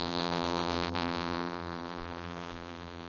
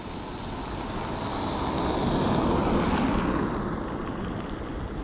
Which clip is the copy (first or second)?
first